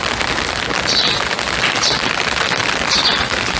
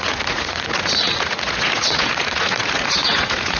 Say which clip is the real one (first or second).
first